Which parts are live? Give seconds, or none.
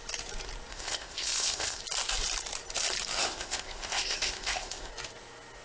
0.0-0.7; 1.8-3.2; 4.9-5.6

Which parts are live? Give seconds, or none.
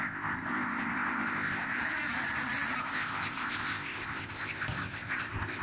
1.8-2.8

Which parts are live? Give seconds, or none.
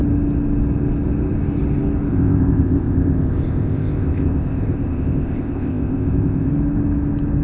0.0-2.1; 6.5-7.4